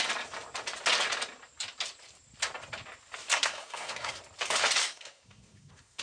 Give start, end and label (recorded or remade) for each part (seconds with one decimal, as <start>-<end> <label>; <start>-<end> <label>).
0.0-3.3 recorded; 3.3-4.2 remade; 4.2-4.8 recorded; 4.8-6.0 remade